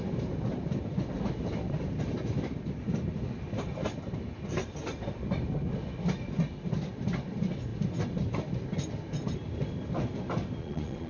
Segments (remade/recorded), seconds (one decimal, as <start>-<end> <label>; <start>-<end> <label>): 0.0-10.6 recorded; 10.6-11.1 remade